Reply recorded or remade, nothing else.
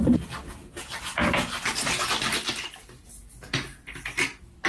recorded